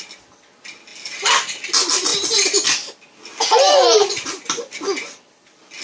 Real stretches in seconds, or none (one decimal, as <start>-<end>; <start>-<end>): 0.0-0.9; 1.7-2.1